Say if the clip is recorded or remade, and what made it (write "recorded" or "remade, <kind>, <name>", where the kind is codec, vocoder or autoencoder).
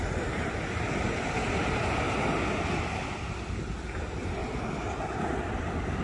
recorded